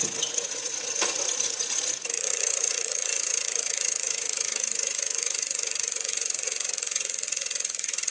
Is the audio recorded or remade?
remade